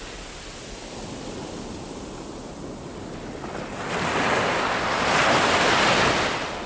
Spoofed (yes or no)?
no